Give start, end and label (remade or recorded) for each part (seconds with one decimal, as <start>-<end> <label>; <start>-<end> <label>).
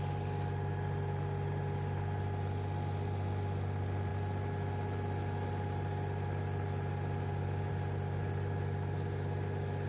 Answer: 0.0-9.9 recorded